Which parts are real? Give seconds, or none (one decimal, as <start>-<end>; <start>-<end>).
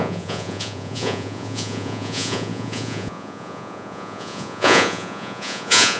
none